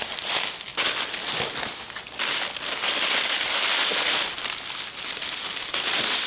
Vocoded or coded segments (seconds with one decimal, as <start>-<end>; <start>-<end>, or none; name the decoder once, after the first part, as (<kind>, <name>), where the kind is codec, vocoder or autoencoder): none